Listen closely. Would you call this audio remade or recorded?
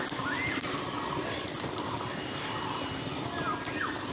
recorded